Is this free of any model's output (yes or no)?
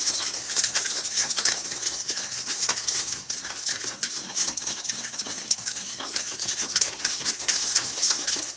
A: no